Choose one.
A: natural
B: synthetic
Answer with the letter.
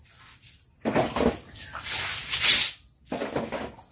A